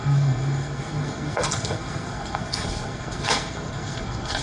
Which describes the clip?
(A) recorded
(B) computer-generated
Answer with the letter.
B